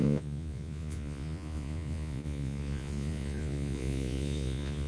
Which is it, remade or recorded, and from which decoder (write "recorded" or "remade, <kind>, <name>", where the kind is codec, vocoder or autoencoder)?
remade, vocoder, Vocos